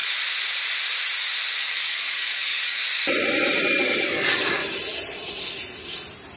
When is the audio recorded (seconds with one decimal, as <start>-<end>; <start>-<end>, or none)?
0.0-1.6; 2.8-3.8; 4.6-6.4